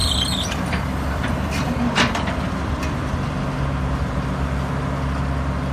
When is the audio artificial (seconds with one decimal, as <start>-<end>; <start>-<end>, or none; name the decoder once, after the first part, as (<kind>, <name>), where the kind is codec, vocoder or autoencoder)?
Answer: 0.0-3.3 (vocoder, BigVGAN v2)